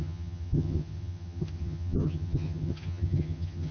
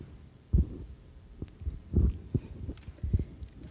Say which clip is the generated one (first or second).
first